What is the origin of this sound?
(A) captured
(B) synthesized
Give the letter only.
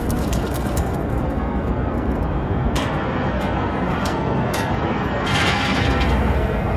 B